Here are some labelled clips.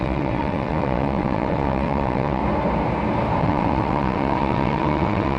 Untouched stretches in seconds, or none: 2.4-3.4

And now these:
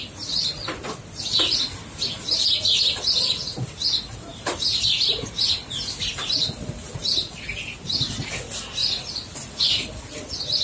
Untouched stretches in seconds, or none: 0.0-4.3; 5.4-7.0; 7.5-8.8; 10.0-10.6

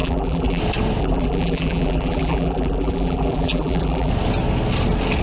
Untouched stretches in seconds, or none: 0.6-1.0; 4.1-5.2

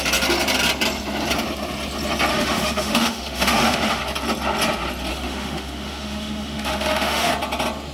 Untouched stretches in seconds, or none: 0.0-2.3; 4.0-5.1; 7.3-7.9